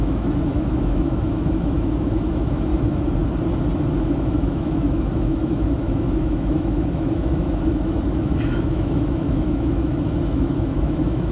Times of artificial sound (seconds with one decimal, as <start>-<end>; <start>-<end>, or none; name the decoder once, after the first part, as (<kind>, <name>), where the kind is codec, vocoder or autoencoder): 0.0-2.7 (autoencoder, DAC-VAE); 4.0-11.3